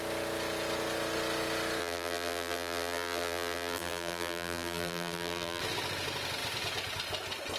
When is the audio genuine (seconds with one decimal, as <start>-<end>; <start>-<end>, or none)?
0.0-1.8; 5.6-7.6